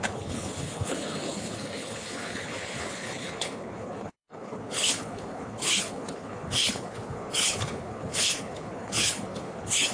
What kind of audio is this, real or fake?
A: fake